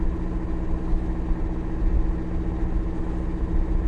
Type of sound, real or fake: real